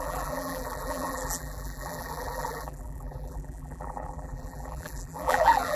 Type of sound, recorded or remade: remade